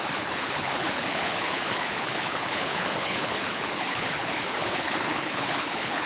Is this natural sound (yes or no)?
no